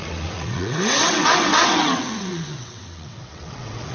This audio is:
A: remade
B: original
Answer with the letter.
A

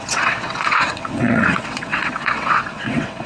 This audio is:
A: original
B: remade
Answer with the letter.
B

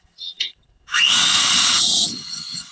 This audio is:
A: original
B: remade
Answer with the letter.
B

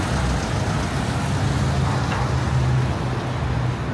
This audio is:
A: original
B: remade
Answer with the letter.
A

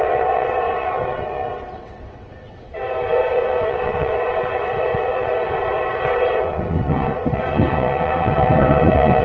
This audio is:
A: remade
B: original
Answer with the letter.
A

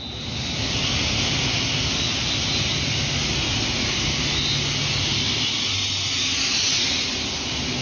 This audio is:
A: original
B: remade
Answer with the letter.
A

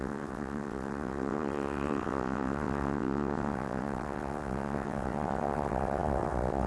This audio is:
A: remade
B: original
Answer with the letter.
A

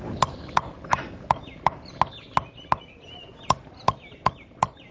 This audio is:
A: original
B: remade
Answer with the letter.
A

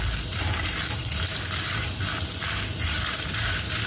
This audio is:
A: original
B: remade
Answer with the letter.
A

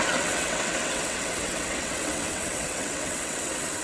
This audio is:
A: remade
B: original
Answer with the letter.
A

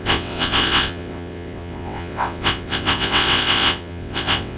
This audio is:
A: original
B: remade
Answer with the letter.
B